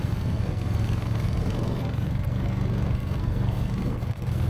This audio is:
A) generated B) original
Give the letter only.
A